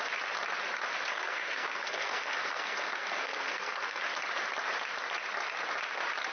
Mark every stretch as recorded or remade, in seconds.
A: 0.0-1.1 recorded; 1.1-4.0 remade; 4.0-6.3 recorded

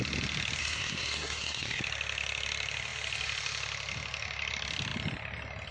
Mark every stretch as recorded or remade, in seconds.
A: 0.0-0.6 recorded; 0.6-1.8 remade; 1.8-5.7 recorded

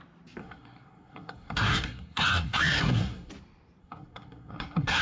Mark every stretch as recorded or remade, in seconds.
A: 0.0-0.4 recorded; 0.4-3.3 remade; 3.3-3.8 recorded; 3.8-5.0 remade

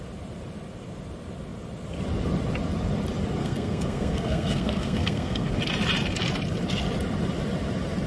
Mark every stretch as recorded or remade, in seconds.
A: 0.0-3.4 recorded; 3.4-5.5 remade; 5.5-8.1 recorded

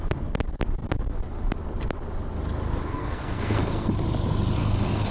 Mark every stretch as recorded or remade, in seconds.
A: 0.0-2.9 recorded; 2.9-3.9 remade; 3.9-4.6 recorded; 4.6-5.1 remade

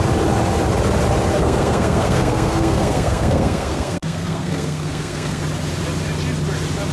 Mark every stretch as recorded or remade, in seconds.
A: 0.0-1.3 recorded; 1.3-5.4 remade; 5.4-6.9 recorded

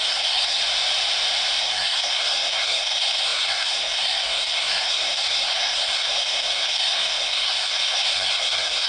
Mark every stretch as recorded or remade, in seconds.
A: 0.0-0.6 remade; 0.6-1.6 recorded; 1.6-8.9 remade

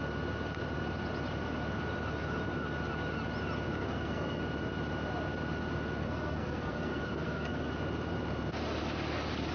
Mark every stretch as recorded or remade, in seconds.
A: 0.0-3.8 recorded; 3.8-4.4 remade; 4.4-6.0 recorded; 6.0-7.7 remade; 7.7-9.5 recorded